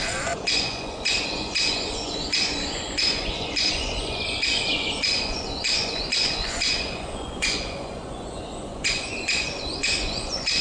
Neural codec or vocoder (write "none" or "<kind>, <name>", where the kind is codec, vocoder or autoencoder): vocoder, Vocos